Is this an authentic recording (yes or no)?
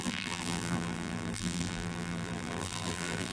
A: no